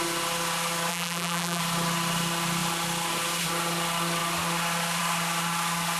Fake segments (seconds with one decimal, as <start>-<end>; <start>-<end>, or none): 0.9-1.6